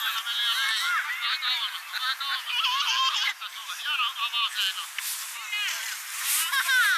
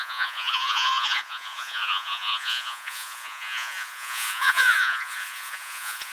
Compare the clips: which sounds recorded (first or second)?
first